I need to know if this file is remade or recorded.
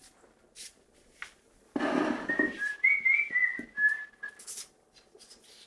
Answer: recorded